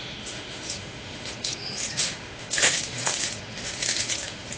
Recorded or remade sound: remade